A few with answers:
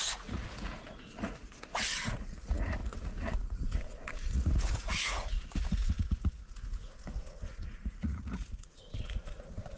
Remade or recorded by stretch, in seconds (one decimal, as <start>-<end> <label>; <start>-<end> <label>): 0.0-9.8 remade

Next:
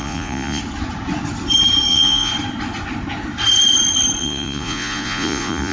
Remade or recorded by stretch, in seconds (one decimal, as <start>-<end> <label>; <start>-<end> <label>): 0.0-0.6 remade; 0.6-1.9 recorded; 1.9-2.3 remade; 2.3-4.2 recorded; 4.2-5.7 remade

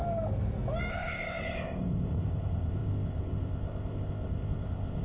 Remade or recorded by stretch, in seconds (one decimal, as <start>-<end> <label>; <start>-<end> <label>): 0.0-0.9 recorded; 0.9-5.0 remade